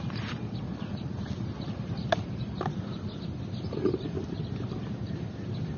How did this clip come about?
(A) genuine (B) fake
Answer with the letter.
B